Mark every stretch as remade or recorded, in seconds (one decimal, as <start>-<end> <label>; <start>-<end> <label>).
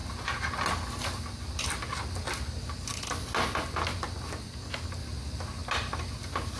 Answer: 0.0-5.6 recorded; 5.6-6.6 remade